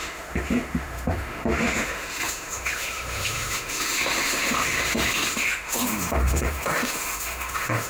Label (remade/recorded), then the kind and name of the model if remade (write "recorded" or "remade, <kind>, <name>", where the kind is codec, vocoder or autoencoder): remade, autoencoder, DAC-VAE